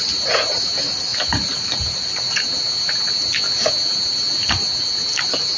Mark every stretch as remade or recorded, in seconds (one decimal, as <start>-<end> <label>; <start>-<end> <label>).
0.0-5.6 recorded